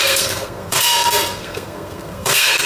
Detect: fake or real fake